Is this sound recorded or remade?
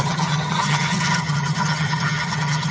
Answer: remade